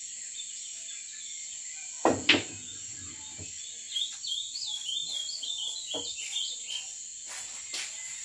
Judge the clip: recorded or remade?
recorded